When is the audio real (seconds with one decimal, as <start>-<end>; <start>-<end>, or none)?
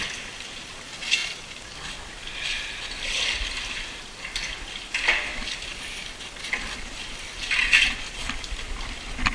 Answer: 0.0-9.3